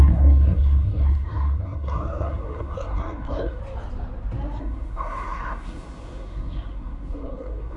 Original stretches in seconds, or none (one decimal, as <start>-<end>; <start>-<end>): 3.6-4.6